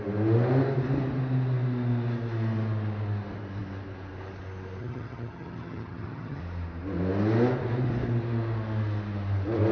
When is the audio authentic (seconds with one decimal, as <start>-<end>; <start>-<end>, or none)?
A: 0.0-4.8; 6.4-9.7